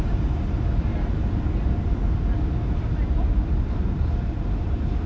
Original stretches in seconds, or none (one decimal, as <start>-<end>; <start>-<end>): 0.0-0.9; 1.5-5.1